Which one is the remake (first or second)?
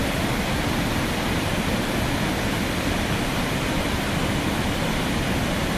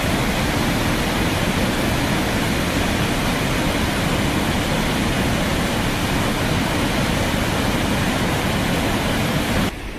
first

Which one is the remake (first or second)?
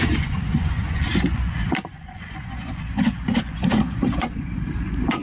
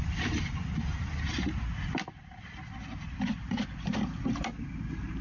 first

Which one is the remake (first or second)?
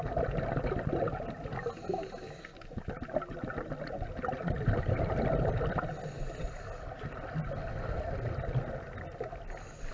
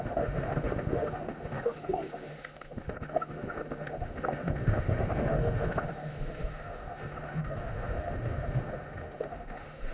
second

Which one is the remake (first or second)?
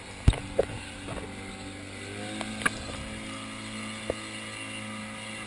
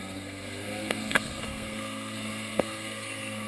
second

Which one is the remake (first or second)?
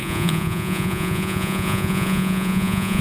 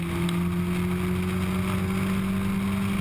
first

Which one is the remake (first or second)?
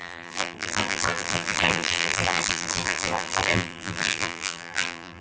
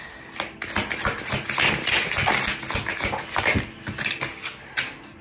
first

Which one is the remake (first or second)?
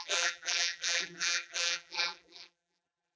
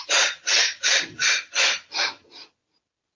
first